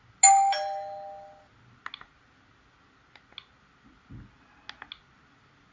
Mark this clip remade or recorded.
recorded